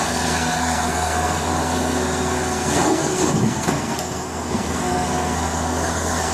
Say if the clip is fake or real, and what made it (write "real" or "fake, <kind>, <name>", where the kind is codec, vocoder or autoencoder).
fake, codec, SNAC